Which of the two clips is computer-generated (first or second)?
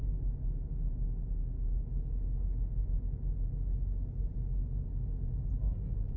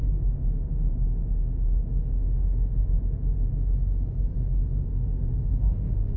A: second